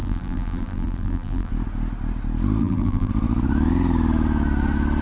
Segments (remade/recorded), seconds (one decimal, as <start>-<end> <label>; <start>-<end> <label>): 0.0-1.5 remade; 1.5-2.6 recorded; 2.6-3.1 remade; 3.1-5.0 recorded